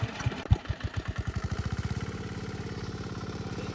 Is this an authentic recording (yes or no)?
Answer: no